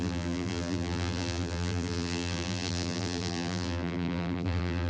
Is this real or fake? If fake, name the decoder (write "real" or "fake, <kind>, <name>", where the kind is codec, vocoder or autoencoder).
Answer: fake, vocoder, BigVGAN v2